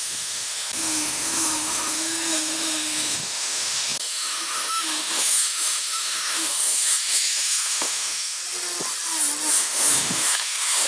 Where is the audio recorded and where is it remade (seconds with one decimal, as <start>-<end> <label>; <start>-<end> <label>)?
0.0-8.4 remade; 8.4-9.5 recorded; 9.5-10.9 remade